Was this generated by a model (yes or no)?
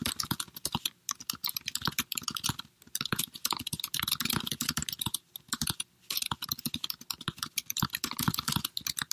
no